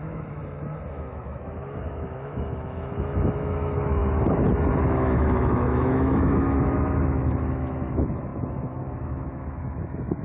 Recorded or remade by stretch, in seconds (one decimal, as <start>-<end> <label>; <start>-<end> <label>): 0.0-0.4 remade; 0.4-0.9 recorded; 0.9-4.0 remade; 4.0-4.8 recorded; 4.8-10.2 remade